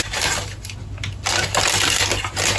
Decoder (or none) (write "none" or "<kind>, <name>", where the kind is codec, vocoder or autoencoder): none